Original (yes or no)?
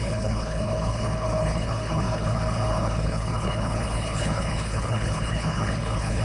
no